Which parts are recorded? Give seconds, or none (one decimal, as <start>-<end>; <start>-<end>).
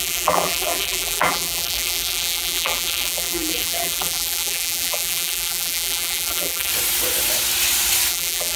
6.7-8.1